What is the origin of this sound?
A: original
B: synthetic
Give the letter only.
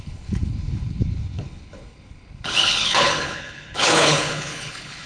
B